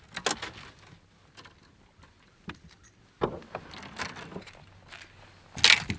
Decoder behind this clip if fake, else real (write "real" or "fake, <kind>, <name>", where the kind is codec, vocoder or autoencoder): real